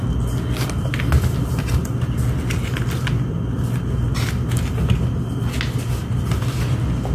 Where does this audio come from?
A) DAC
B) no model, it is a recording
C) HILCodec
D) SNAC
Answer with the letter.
B